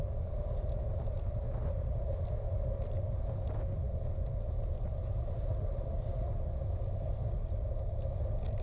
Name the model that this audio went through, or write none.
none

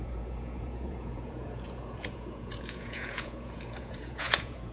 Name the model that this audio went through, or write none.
vocoder, Vocos